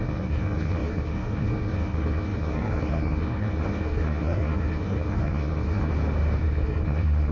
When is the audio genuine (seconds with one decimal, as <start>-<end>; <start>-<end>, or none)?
5.9-6.4